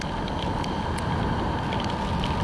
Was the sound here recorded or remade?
recorded